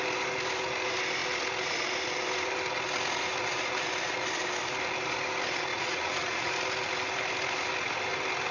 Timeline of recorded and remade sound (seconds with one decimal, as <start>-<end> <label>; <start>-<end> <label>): 0.0-5.7 recorded; 5.7-6.5 remade; 6.5-8.5 recorded